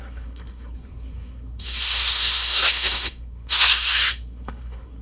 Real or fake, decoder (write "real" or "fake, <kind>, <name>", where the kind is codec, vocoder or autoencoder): fake, codec, SNAC